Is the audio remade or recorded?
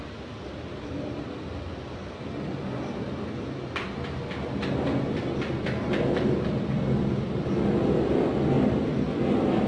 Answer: recorded